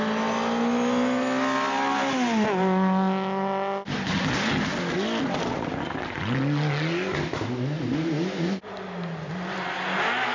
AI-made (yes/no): no